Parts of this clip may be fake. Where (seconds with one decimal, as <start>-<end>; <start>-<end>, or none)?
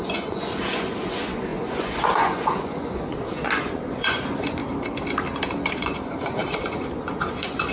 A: 0.0-4.6; 5.7-7.7